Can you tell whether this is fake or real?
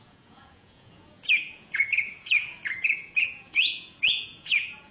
fake